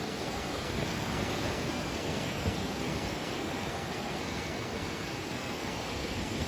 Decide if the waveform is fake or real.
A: fake